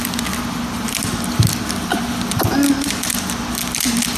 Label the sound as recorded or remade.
recorded